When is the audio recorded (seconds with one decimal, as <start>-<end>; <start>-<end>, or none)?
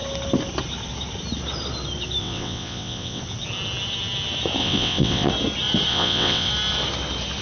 0.0-2.2; 3.2-4.6; 5.3-5.9; 6.5-7.4